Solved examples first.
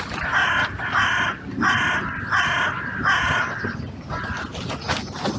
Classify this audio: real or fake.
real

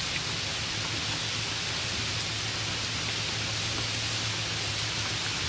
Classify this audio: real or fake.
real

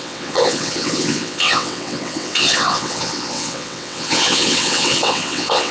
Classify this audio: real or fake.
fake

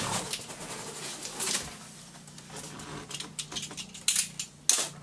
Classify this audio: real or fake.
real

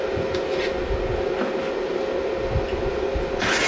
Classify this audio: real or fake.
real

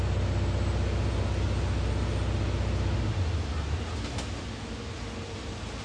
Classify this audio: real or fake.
real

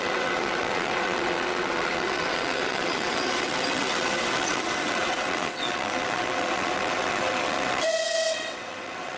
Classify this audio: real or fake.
fake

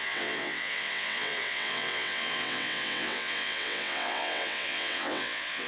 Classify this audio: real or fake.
fake